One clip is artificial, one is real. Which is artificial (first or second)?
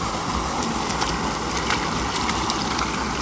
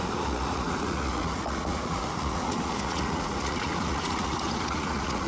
second